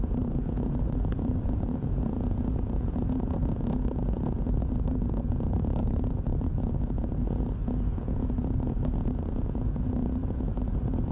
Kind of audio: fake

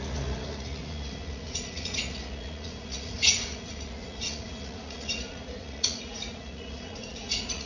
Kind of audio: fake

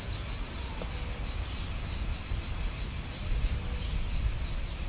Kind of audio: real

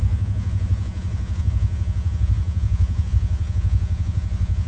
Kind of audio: fake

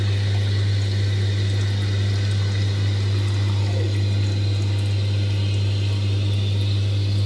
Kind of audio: real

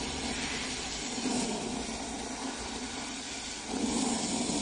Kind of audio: real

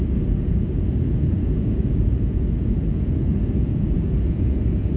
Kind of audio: fake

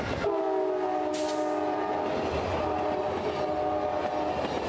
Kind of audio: real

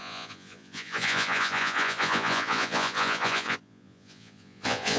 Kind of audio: fake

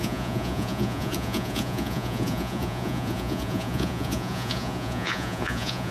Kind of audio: fake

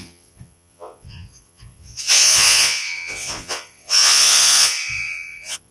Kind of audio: fake